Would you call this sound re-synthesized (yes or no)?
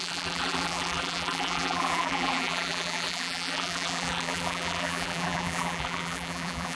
yes